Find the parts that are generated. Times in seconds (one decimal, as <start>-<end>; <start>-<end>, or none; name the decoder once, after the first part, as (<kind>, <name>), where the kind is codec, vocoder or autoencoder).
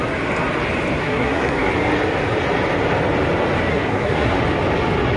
1.0-1.7 (codec, SNAC); 3.7-4.4